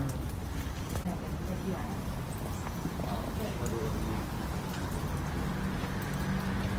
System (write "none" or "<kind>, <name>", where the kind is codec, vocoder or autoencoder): none